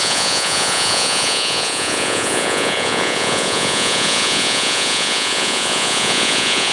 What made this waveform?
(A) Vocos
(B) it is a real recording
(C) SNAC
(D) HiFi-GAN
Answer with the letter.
A